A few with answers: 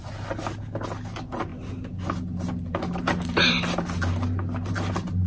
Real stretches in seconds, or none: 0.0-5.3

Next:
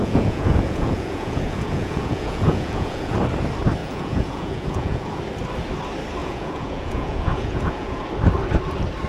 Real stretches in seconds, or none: 3.1-3.8; 5.2-6.2; 8.0-9.1

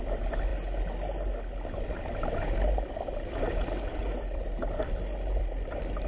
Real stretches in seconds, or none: 0.5-4.2

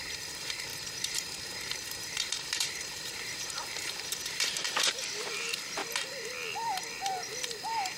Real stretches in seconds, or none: 5.8-7.6

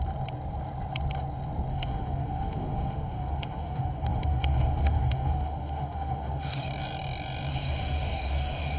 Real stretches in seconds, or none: 0.0-1.7; 6.7-7.5

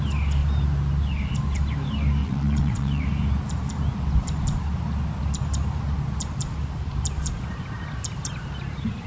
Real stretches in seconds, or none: 0.0-2.2; 3.0-9.1